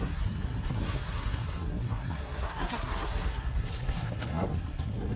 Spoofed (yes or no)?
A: yes